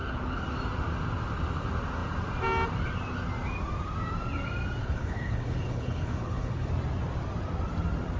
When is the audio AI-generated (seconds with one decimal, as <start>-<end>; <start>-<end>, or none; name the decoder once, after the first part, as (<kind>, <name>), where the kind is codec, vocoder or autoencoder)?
4.8-6.7 (codec, HILCodec)